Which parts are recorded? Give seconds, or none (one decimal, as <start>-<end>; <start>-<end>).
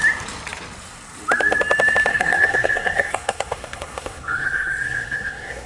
0.0-2.1